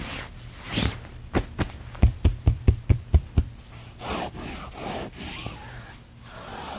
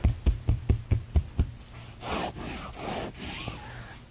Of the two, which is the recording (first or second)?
second